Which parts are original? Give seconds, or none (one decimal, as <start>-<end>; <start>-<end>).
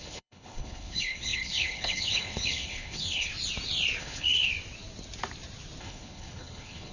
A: 3.3-4.0; 4.5-5.8